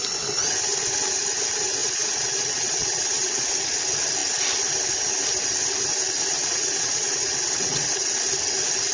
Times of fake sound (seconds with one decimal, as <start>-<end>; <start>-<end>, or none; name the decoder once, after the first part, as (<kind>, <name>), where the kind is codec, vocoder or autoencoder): 1.8-3.8 (vocoder, WaveNeXt); 6.3-8.2